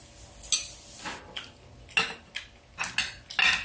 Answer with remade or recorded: recorded